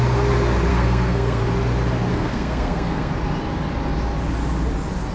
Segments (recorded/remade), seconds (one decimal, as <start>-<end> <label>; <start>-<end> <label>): 0.0-0.7 recorded; 0.7-1.4 remade; 1.4-2.1 recorded; 2.1-3.1 remade; 3.1-5.1 recorded